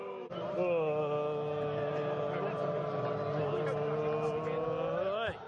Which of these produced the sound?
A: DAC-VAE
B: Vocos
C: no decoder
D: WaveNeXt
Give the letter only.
C